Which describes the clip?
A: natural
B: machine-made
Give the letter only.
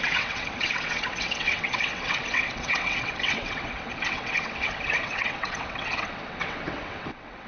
B